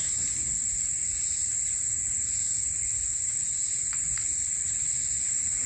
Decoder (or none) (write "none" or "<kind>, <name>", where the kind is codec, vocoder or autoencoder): none